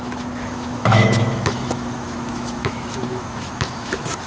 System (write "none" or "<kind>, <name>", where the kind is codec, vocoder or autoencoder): autoencoder, DAC-VAE